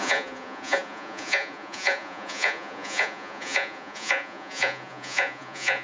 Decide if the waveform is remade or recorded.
remade